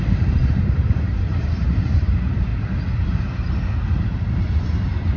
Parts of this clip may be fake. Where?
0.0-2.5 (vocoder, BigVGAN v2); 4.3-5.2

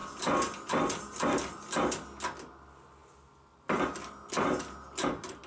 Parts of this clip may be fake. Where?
none

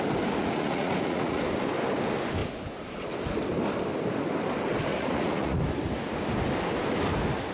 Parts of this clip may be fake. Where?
0.4-1.4 (vocoder, Vocos); 4.9-5.6